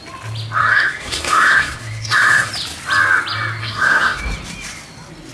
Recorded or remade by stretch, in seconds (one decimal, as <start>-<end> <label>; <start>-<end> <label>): 0.0-0.6 recorded; 0.6-2.5 remade; 2.5-3.6 recorded; 3.6-4.2 remade; 4.2-5.3 recorded

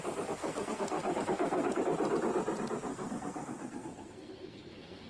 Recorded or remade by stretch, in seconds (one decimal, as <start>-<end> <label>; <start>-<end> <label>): 0.0-0.4 recorded; 0.4-1.8 remade; 1.8-2.9 recorded; 2.9-5.1 remade

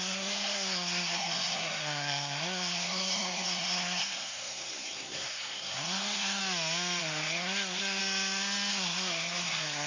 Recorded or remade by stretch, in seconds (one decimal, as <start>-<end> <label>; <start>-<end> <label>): 0.0-6.4 remade; 6.4-7.0 recorded; 7.0-8.0 remade; 8.0-8.7 recorded; 8.7-9.9 remade

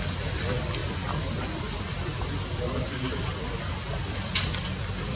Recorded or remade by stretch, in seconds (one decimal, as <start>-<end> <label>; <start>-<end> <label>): 0.0-5.2 recorded

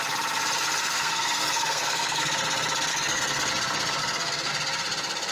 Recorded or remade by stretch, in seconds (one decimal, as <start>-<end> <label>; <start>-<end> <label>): 0.0-0.8 recorded; 0.8-2.2 remade; 2.2-2.9 recorded; 2.9-3.5 remade; 3.5-4.0 recorded; 4.0-4.5 remade; 4.5-5.3 recorded

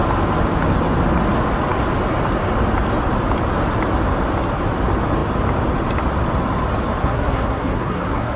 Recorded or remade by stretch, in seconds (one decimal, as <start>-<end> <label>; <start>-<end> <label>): 0.0-7.0 recorded; 7.0-8.4 remade

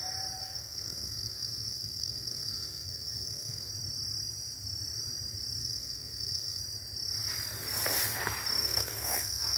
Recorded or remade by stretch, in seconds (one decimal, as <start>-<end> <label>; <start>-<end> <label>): 0.0-0.4 recorded; 0.4-3.7 remade; 3.7-5.6 recorded; 5.6-6.6 remade; 6.6-8.6 recorded; 8.6-9.6 remade